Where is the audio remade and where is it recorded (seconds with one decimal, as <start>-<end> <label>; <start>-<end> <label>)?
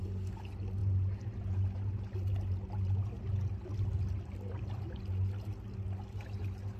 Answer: 0.0-6.8 recorded